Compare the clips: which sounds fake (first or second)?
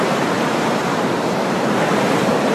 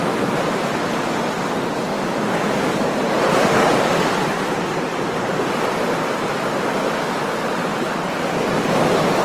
first